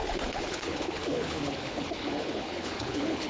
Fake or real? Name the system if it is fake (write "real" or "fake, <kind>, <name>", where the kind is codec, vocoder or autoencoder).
fake, codec, HILCodec